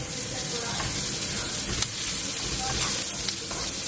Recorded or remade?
recorded